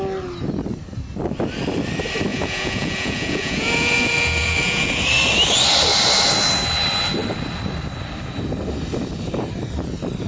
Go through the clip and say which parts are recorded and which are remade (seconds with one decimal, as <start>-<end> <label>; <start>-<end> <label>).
0.0-2.3 recorded; 2.3-4.9 remade; 4.9-10.3 recorded